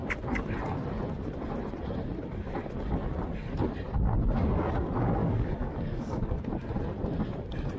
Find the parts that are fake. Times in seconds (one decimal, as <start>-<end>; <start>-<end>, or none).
5.2-6.4